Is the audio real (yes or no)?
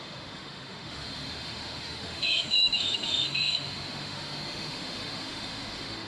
no